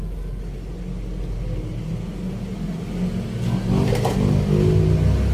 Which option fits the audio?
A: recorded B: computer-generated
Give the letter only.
A